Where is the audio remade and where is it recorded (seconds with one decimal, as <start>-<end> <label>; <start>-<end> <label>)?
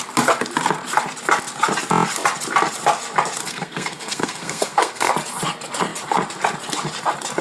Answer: 0.0-3.4 recorded; 3.4-5.1 remade; 5.1-7.4 recorded